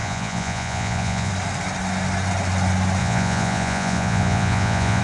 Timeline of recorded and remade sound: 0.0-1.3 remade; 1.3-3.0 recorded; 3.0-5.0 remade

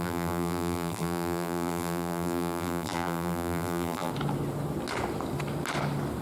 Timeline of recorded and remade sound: 0.0-4.1 remade; 4.1-6.2 recorded

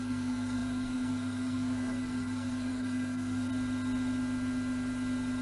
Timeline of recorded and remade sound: 0.0-3.5 remade; 3.5-5.4 recorded